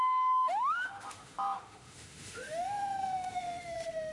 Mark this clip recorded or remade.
remade